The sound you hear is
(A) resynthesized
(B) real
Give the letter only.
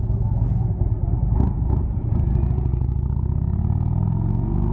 B